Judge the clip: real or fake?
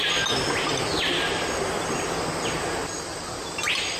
real